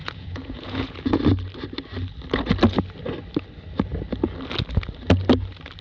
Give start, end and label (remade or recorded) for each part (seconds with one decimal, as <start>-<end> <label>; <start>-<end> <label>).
0.0-1.2 remade; 1.2-5.8 recorded